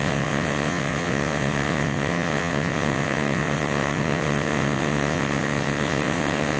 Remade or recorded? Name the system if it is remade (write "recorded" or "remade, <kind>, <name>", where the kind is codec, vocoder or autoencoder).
remade, vocoder, WaveNeXt